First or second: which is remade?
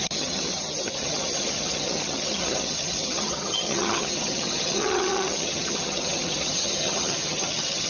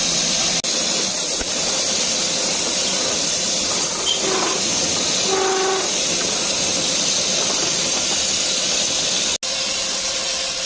first